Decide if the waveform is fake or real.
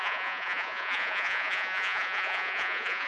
fake